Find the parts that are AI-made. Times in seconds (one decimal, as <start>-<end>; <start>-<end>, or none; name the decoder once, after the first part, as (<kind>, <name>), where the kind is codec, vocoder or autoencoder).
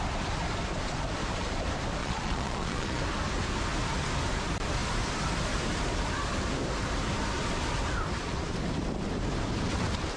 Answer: 2.0-3.0 (vocoder, Vocos)